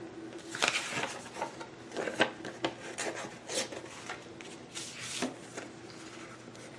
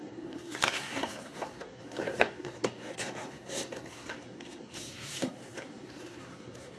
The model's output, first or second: second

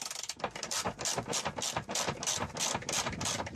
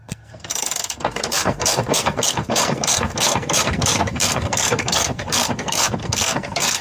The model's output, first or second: second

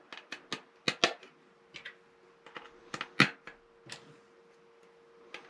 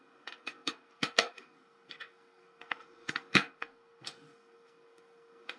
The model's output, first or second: second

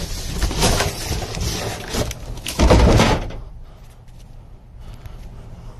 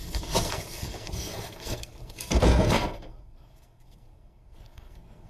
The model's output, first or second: second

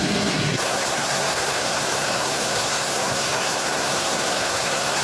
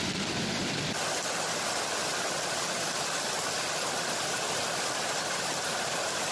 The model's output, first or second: first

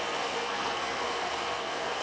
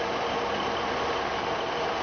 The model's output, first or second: first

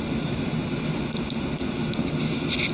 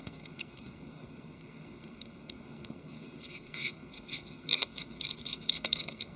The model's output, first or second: second